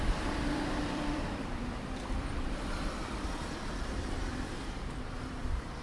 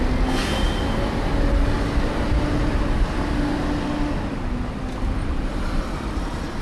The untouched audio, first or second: second